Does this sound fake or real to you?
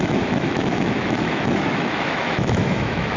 fake